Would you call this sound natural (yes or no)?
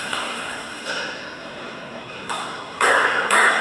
no